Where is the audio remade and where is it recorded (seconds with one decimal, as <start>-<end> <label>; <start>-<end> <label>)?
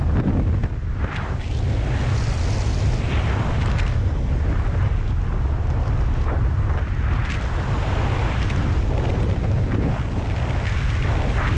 0.0-3.7 recorded; 3.7-4.3 remade; 4.3-11.6 recorded